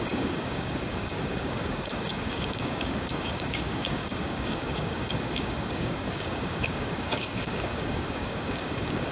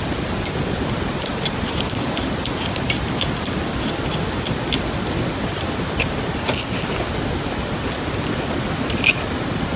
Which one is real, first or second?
second